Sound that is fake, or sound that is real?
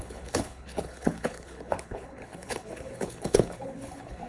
fake